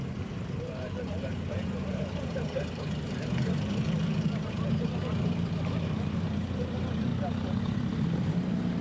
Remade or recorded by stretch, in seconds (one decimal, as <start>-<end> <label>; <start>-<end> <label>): 0.0-8.8 remade